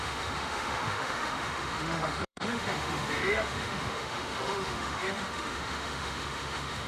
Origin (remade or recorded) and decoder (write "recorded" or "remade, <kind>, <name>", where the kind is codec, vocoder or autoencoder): remade, autoencoder, DAC-VAE